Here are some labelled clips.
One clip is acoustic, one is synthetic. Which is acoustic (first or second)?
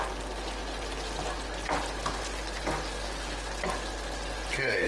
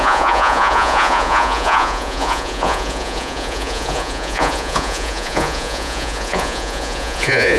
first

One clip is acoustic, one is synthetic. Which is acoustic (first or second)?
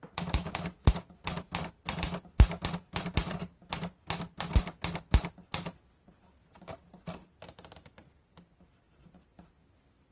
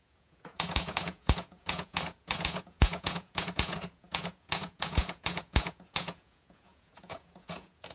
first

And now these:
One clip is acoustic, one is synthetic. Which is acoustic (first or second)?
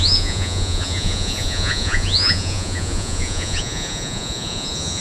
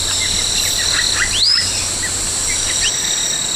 second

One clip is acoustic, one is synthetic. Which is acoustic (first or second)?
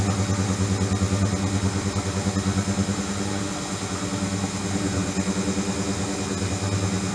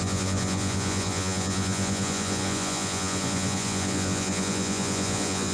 first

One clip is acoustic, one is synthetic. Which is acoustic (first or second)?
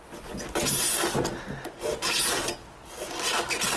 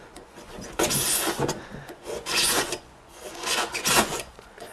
first